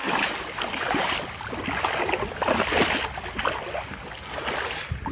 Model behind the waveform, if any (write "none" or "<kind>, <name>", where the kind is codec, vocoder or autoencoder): none